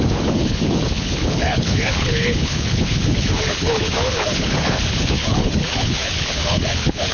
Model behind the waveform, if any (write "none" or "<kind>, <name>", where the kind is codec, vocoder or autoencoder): codec, HILCodec